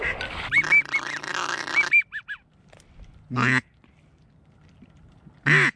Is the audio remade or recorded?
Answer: recorded